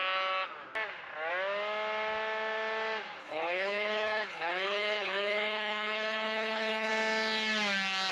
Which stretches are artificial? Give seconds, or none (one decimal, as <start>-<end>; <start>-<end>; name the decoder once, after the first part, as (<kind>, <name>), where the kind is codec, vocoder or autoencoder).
3.2-6.9 (codec, HILCodec)